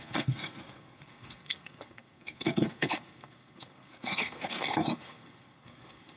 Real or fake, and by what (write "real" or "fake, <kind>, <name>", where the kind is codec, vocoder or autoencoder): fake, codec, SNAC